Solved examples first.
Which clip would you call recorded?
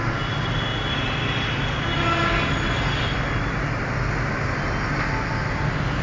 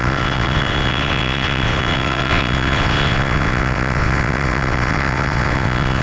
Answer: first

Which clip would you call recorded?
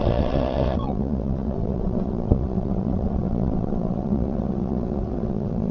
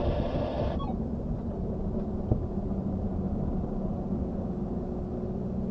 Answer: second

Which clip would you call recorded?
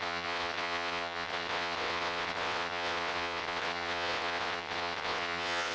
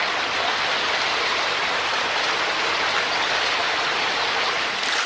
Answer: second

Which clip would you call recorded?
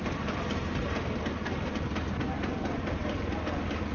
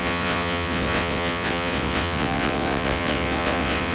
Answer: first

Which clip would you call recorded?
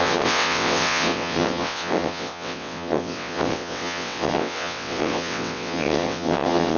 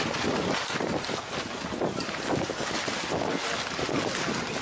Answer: second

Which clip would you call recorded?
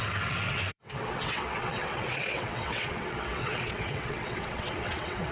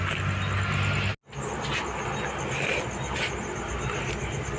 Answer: second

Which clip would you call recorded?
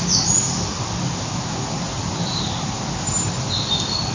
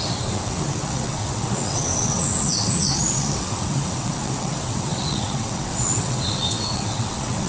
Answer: first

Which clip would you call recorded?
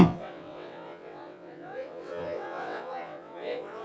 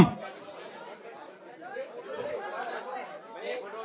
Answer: second